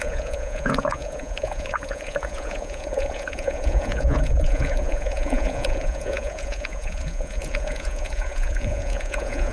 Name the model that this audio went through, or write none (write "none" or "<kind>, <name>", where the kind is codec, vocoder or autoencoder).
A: vocoder, Vocos